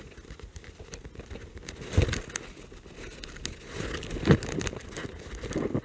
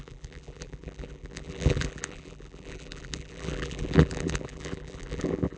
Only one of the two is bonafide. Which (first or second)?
first